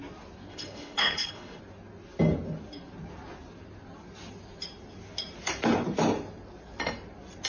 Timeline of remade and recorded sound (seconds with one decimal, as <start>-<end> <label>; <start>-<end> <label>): 0.0-0.5 recorded; 0.5-1.6 remade; 1.6-7.5 recorded